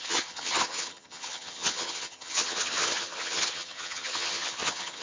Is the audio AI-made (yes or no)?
yes